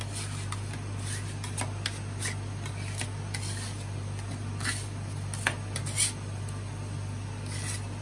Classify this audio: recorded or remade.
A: recorded